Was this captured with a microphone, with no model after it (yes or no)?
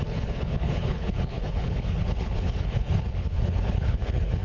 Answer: no